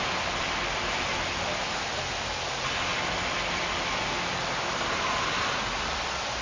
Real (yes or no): yes